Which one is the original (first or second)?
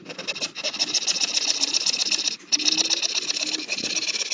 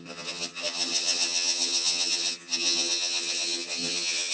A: first